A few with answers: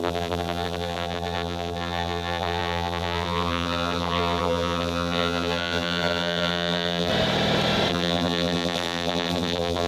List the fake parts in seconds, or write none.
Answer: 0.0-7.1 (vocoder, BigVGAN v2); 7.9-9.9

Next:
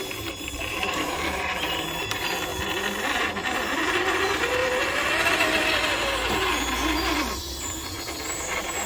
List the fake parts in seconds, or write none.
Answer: 0.0-2.5 (vocoder, BigVGAN v2); 3.7-4.6; 7.4-8.9

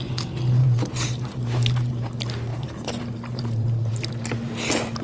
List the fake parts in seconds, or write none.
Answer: 0.6-2.1 (vocoder, BigVGAN v2); 2.5-4.1

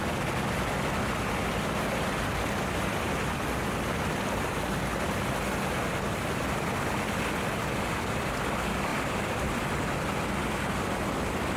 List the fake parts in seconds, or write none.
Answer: none

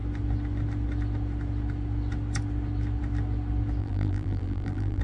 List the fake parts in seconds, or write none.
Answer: 3.8-5.0 (vocoder, BigVGAN v2)

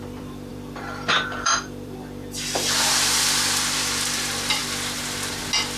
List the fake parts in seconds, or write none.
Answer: 0.0-4.6 (vocoder, BigVGAN v2)